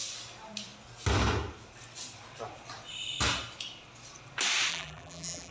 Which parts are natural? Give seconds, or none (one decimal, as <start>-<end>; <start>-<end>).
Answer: 0.0-4.7